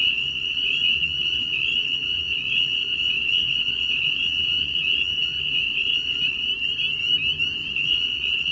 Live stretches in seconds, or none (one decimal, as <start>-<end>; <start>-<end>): 6.5-7.7